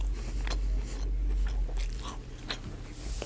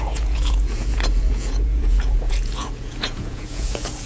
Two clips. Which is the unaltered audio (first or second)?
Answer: first